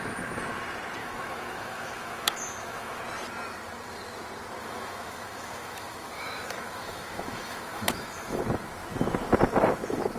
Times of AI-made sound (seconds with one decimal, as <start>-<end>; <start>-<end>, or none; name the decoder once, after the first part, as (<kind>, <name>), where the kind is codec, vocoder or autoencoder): 1.0-3.0 (autoencoder, DAC-VAE); 4.6-8.4

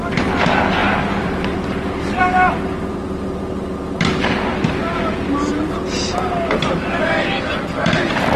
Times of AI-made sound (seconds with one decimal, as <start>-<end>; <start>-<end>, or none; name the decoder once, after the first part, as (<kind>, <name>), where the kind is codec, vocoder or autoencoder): 0.8-2.2 (vocoder, BigVGAN v2); 4.8-5.5

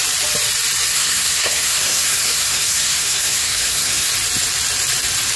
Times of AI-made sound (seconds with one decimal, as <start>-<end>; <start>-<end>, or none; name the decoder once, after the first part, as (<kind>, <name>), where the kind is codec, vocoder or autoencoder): 0.9-4.1 (codec, SNAC)

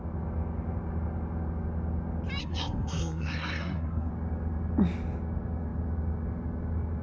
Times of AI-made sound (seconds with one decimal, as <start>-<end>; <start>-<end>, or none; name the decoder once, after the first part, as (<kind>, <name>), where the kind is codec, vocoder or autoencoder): 2.4-4.1 (codec, SNAC)

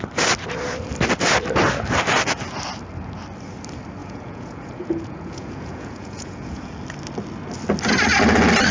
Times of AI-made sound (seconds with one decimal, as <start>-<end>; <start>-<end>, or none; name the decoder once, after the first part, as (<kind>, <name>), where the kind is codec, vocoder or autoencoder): 4.0-6.7 (vocoder, Vocos)

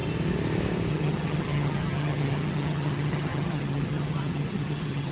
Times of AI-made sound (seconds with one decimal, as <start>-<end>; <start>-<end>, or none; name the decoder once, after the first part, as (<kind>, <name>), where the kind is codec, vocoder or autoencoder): 0.9-5.1 (vocoder, HiFi-GAN)

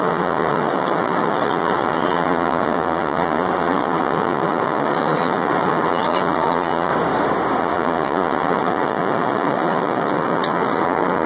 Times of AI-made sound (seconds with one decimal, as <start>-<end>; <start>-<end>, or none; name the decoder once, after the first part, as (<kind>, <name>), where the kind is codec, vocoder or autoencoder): 0.0-6.9 (vocoder, Vocos); 7.6-11.3